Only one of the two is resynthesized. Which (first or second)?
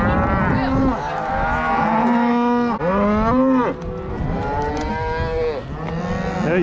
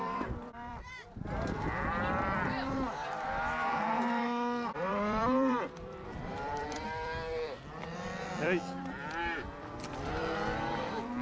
second